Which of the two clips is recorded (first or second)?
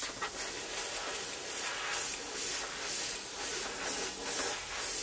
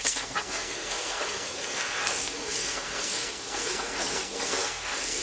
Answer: first